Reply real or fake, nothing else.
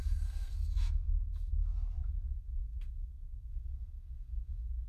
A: fake